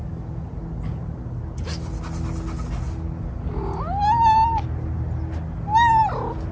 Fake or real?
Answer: real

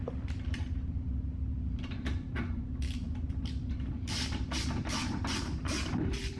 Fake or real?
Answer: fake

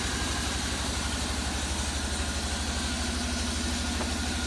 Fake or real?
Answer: real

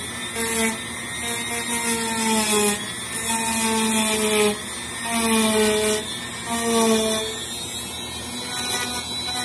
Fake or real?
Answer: real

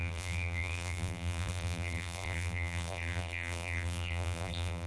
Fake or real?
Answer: fake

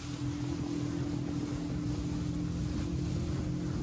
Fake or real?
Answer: real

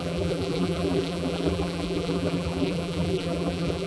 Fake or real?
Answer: fake